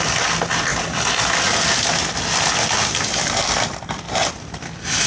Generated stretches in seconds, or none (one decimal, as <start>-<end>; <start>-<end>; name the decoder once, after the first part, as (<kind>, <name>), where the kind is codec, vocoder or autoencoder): none